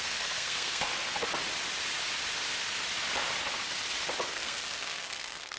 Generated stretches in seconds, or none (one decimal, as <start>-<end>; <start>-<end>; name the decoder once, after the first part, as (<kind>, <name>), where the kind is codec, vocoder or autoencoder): 0.0-0.9 (codec, SNAC); 4.3-5.6